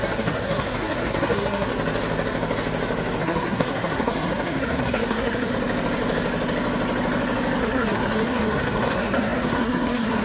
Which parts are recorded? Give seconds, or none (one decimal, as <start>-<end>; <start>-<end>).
1.7-3.2; 5.5-7.6